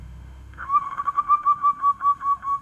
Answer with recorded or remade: remade